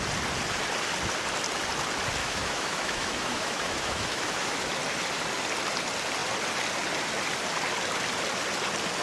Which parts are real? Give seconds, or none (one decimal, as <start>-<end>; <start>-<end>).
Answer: 0.0-2.2; 4.7-9.0